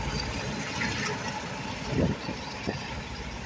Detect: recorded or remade recorded